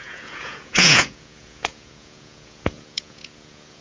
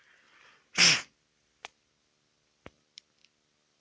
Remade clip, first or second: first